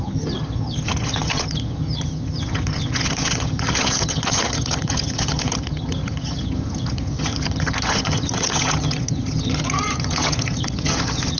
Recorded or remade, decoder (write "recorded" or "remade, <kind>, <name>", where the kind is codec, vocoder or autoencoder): remade, vocoder, HiFi-GAN